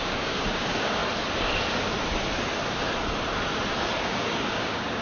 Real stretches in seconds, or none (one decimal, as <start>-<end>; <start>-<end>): 1.0-4.0